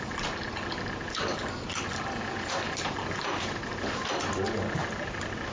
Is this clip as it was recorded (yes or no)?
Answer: yes